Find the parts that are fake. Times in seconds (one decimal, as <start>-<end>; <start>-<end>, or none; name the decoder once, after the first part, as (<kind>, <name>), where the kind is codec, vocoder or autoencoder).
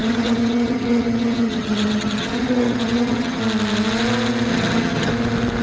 0.0-3.4 (vocoder, HiFi-GAN); 4.5-5.1